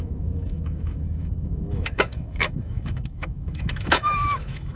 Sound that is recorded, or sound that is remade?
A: remade